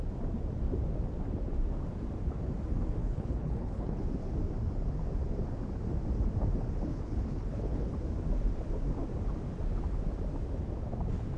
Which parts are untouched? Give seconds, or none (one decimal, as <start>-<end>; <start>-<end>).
0.0-3.0; 4.0-6.9; 7.9-11.4